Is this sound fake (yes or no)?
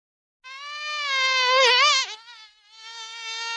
no